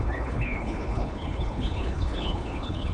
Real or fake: fake